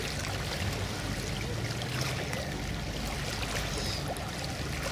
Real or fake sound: real